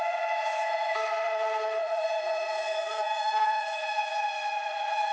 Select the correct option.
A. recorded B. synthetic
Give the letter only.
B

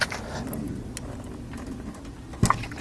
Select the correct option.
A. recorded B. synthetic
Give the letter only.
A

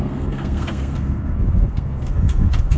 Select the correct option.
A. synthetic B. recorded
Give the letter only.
A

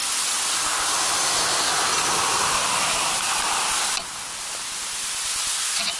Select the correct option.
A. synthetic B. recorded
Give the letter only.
B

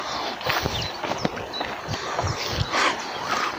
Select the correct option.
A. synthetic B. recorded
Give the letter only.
B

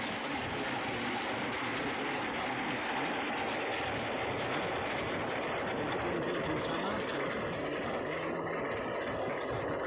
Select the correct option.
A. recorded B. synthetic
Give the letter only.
A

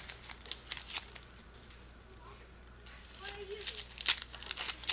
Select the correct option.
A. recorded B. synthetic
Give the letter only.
A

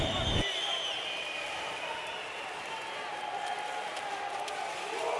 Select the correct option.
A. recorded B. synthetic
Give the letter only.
A